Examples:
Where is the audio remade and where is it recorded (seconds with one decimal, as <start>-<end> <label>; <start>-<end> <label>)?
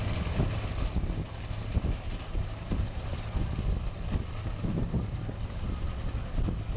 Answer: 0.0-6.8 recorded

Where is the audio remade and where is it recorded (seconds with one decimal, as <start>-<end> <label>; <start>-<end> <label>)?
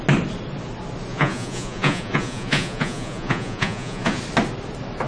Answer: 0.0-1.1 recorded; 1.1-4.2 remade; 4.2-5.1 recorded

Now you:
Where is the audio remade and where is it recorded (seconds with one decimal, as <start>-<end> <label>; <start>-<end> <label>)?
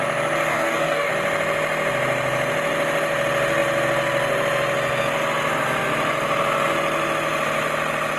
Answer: 0.0-0.5 recorded; 0.5-1.1 remade; 1.1-8.2 recorded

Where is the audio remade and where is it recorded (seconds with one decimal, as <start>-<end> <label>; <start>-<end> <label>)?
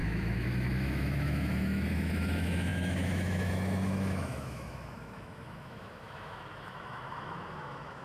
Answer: 0.0-8.0 remade